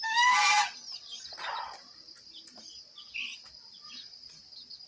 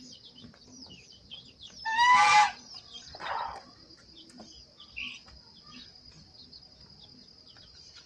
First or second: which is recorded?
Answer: second